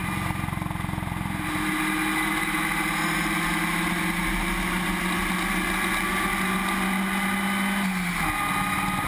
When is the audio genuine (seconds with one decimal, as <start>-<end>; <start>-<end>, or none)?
0.0-9.1